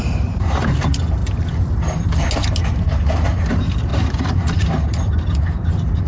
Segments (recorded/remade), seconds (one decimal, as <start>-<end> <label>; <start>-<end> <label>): 0.0-1.2 remade; 1.2-3.5 recorded; 3.5-6.1 remade